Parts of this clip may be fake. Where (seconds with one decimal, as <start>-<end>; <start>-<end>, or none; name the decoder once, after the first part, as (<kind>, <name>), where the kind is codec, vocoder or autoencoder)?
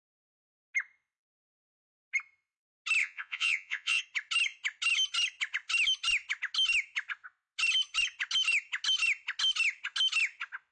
3.0-4.0 (vocoder, Vocos)